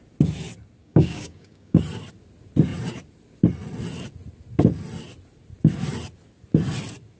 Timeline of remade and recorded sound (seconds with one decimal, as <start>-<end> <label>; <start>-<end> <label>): 0.0-0.8 recorded; 0.8-1.8 remade; 1.8-7.2 recorded